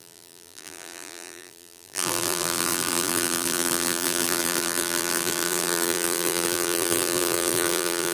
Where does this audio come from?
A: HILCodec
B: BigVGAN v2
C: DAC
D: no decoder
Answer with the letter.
B